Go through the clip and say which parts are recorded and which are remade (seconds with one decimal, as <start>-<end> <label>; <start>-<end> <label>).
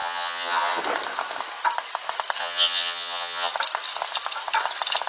0.0-0.8 remade; 0.8-2.4 recorded; 2.4-3.5 remade; 3.5-5.1 recorded